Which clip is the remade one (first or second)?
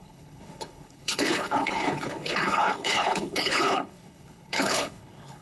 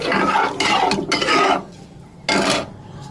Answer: first